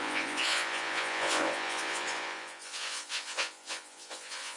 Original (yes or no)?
no